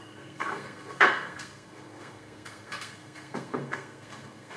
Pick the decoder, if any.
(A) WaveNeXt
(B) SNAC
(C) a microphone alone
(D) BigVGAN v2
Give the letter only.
B